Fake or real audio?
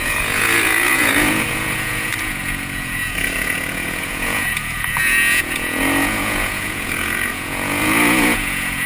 fake